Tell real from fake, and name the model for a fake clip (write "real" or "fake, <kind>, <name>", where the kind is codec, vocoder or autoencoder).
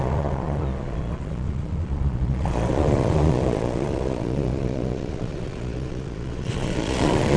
fake, vocoder, Vocos